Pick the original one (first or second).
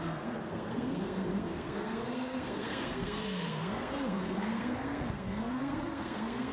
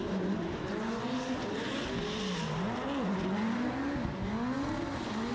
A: second